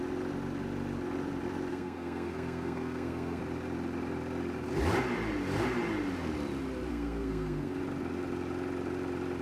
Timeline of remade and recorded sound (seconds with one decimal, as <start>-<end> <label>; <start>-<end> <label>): 0.0-1.7 recorded; 1.7-3.4 remade; 3.4-6.9 recorded; 6.9-7.8 remade; 7.8-9.4 recorded